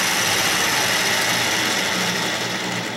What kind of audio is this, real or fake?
real